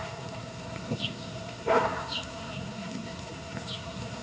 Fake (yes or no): yes